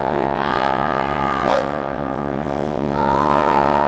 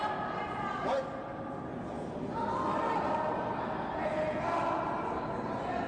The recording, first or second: second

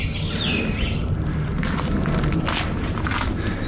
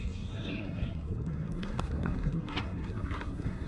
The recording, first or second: first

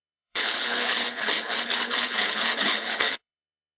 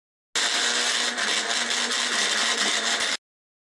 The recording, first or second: second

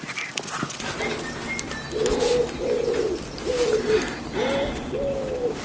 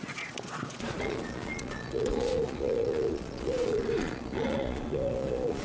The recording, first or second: first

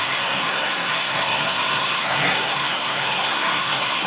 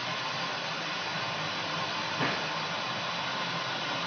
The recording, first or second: second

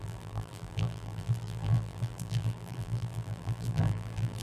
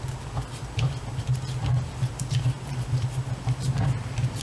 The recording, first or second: second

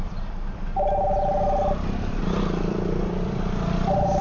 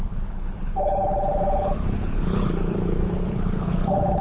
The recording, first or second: first